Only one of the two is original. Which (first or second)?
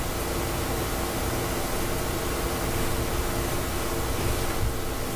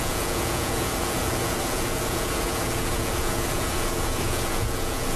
first